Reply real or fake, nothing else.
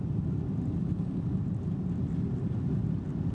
real